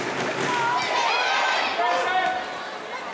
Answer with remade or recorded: recorded